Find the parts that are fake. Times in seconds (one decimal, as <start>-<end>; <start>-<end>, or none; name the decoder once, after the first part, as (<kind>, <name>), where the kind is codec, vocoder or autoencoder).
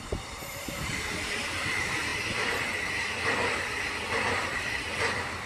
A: none